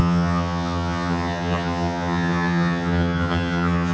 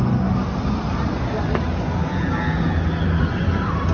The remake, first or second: first